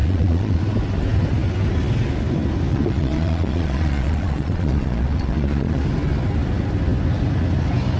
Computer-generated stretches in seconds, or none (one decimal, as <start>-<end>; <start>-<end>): 0.0-0.6; 2.7-5.8